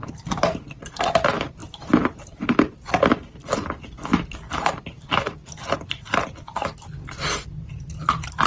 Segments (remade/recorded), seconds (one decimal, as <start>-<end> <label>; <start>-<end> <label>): 0.0-8.5 recorded